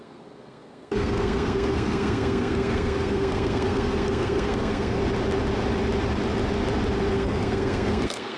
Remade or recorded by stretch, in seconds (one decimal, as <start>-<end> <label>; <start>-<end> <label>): 0.0-5.0 remade; 5.0-7.1 recorded; 7.1-8.4 remade

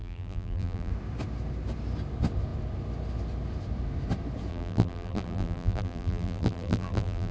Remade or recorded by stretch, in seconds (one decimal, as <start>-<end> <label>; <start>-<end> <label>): 0.0-0.9 remade; 0.9-4.5 recorded; 4.5-7.3 remade

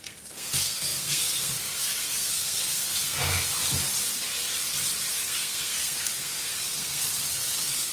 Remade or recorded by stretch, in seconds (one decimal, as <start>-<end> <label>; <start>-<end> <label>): 0.0-3.6 remade; 3.6-5.1 recorded; 5.1-7.9 remade

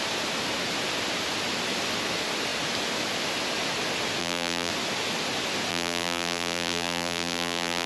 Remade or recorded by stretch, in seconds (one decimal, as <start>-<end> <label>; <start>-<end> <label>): 0.0-4.2 recorded; 4.2-4.7 remade; 4.7-5.7 recorded; 5.7-7.9 remade